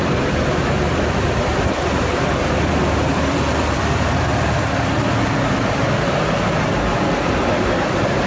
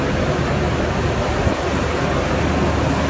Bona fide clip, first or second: second